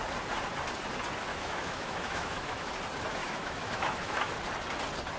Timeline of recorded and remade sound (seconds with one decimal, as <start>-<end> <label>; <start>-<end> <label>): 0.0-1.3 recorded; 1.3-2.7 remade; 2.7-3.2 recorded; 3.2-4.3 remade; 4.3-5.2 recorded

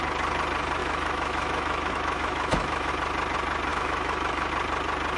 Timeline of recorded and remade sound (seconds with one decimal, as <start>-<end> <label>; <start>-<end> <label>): 0.0-0.8 recorded; 0.8-2.9 remade; 2.9-3.7 recorded; 3.7-4.5 remade; 4.5-5.2 recorded

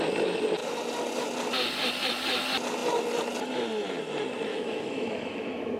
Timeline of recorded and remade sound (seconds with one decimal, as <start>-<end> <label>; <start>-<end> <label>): 0.0-4.5 recorded; 4.5-5.8 remade

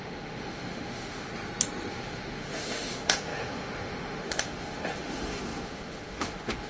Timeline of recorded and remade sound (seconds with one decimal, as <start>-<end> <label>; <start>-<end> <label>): 0.0-1.3 remade; 1.3-1.9 recorded; 1.9-6.7 remade

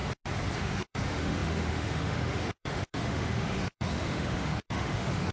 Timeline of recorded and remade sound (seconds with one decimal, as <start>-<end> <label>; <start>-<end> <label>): 0.0-0.6 recorded; 0.6-5.3 remade

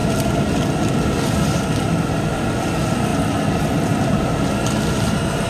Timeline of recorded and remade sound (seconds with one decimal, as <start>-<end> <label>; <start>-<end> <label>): 0.0-5.5 recorded